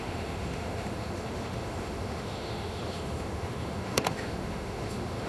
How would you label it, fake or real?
fake